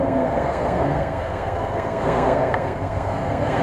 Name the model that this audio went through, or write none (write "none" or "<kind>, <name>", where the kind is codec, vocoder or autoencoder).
codec, SNAC